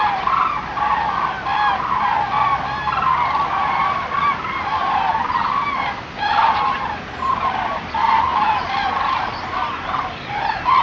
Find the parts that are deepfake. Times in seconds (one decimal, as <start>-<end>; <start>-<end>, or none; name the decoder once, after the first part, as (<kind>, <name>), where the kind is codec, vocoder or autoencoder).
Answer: none